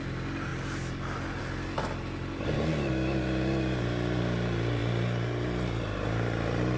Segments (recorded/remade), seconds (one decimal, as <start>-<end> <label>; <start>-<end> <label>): 0.0-6.8 recorded